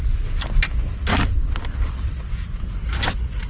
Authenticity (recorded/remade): recorded